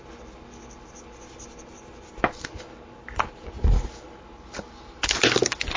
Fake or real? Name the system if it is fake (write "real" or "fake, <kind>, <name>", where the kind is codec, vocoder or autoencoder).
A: real